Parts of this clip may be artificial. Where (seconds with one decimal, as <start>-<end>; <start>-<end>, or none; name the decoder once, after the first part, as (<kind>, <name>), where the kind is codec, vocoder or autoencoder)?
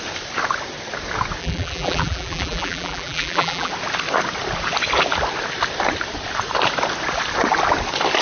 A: 1.4-3.7 (vocoder, BigVGAN v2)